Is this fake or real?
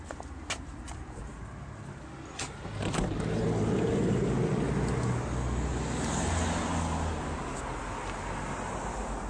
real